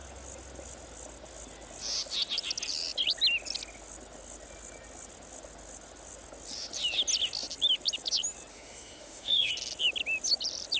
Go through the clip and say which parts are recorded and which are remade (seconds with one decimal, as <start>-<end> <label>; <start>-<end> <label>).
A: 0.0-8.5 recorded; 8.5-9.5 remade; 9.5-10.8 recorded